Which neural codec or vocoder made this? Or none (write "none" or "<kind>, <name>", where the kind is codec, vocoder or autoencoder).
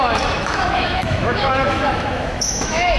autoencoder, DAC-VAE